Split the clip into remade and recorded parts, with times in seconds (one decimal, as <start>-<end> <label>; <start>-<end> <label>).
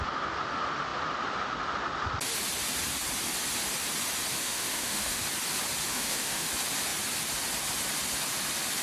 0.0-4.3 recorded; 4.3-5.2 remade; 5.2-5.9 recorded; 5.9-6.5 remade; 6.5-8.8 recorded